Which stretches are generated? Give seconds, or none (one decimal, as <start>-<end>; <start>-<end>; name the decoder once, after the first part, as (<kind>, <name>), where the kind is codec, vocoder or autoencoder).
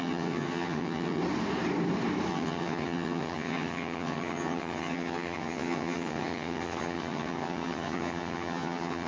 0.0-1.2 (vocoder, HiFi-GAN); 2.3-9.1